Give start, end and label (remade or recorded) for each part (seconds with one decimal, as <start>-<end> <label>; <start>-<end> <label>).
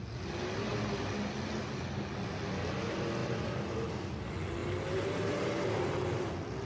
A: 0.0-3.2 recorded; 3.2-4.1 remade; 4.1-4.6 recorded; 4.6-6.3 remade; 6.3-6.7 recorded